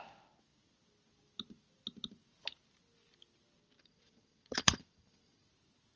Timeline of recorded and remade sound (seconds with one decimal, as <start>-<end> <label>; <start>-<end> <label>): 0.0-3.8 recorded; 3.8-5.5 remade; 5.5-6.0 recorded